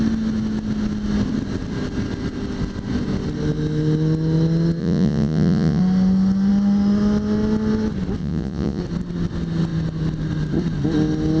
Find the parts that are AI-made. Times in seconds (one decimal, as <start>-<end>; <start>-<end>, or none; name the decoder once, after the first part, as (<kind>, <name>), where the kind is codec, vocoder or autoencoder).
4.8-5.8 (vocoder, Vocos); 8.2-8.8